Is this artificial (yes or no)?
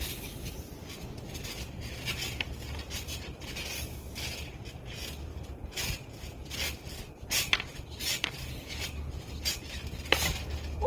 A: no